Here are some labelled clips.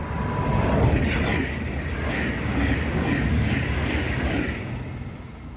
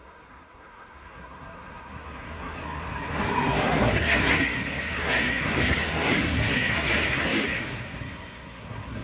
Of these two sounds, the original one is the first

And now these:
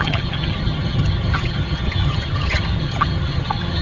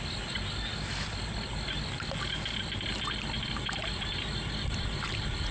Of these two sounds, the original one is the second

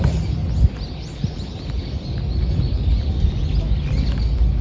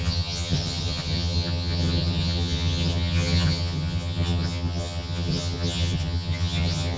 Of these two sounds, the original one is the first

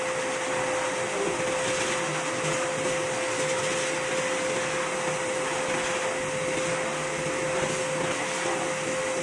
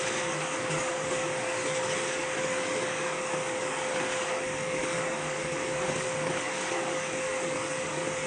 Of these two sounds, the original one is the first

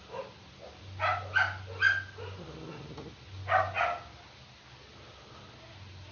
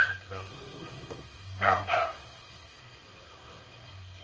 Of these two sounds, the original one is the first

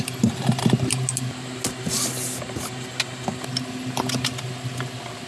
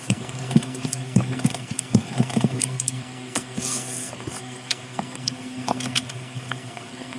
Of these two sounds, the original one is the first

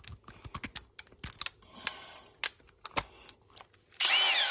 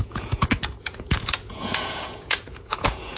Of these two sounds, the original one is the first